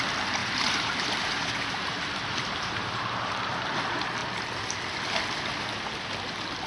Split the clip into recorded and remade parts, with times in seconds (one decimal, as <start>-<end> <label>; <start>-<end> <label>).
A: 0.0-0.4 recorded; 0.4-3.7 remade; 3.7-6.7 recorded